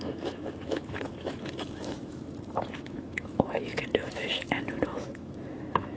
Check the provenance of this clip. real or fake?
fake